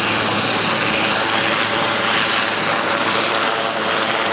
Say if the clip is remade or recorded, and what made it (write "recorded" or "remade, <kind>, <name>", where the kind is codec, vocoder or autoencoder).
remade, vocoder, BigVGAN v2